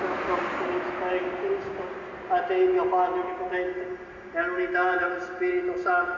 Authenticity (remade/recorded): recorded